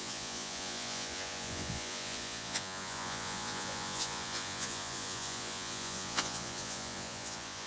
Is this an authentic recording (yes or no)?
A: no